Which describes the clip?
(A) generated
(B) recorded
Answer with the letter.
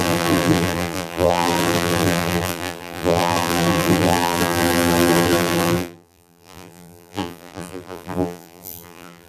A